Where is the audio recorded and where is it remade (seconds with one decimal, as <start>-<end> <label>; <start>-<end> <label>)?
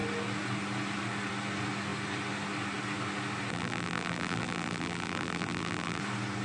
0.0-3.5 recorded; 3.5-6.0 remade; 6.0-6.4 recorded